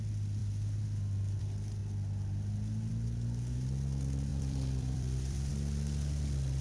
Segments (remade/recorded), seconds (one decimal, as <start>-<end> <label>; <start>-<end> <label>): 0.0-0.4 recorded; 0.4-1.4 remade; 1.4-4.3 recorded; 4.3-5.5 remade; 5.5-6.6 recorded